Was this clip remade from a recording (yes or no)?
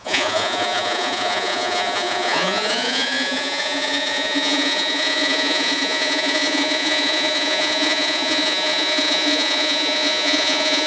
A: yes